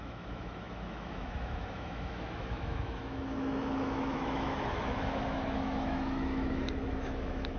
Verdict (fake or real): fake